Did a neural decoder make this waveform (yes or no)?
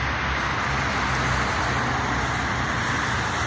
no